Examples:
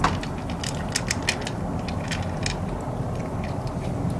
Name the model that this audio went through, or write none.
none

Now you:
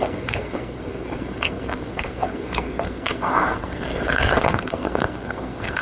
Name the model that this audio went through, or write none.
codec, SNAC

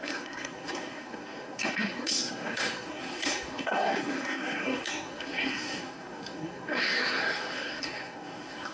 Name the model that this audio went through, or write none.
codec, SNAC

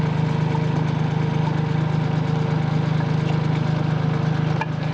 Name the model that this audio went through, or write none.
none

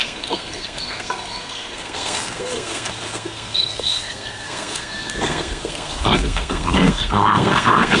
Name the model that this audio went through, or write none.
codec, SNAC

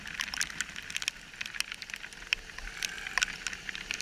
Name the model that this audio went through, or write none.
none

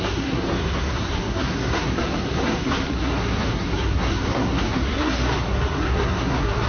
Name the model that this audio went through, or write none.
codec, SNAC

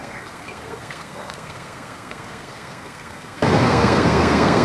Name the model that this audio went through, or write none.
codec, SNAC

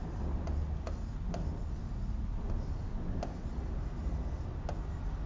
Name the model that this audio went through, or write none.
none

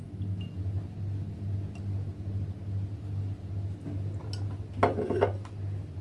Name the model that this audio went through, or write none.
none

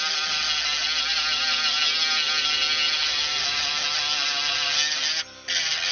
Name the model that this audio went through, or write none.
none